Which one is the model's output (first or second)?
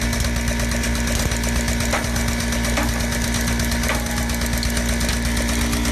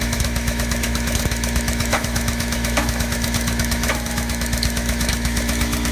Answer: second